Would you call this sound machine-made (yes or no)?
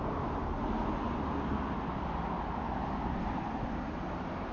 no